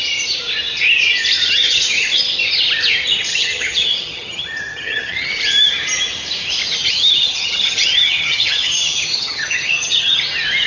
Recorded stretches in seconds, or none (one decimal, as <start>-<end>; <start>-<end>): 0.0-1.4; 2.2-3.3; 5.3-6.8; 10.2-10.7